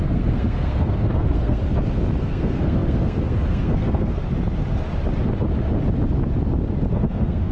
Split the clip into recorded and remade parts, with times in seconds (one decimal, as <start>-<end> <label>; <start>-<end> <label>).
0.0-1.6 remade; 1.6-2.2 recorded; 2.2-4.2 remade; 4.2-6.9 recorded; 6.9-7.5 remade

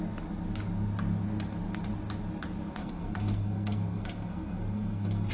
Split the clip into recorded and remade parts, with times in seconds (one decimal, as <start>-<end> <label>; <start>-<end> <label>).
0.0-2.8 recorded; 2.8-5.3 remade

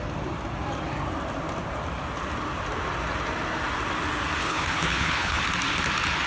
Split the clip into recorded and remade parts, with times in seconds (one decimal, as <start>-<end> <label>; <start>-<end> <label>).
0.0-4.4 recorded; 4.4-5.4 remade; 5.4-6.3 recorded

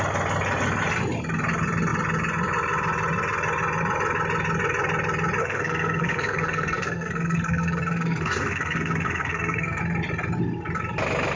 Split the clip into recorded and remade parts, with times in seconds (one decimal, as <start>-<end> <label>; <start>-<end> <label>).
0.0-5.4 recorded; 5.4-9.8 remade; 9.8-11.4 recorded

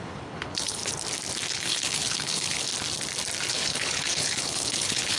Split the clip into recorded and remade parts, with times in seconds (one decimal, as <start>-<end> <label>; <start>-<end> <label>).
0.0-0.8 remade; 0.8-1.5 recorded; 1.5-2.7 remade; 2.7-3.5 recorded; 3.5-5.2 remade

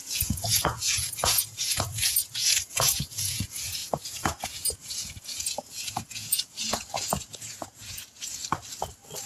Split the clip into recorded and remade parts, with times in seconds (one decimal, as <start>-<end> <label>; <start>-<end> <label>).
0.0-8.4 remade; 8.4-9.3 recorded

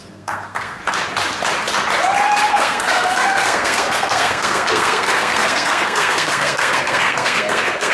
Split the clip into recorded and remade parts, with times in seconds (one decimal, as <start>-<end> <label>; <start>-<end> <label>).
0.0-0.8 remade; 0.8-2.5 recorded; 2.5-7.9 remade

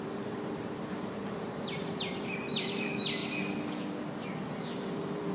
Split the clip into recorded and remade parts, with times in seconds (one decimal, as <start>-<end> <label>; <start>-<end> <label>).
0.0-3.2 remade; 3.2-4.6 recorded; 4.6-5.3 remade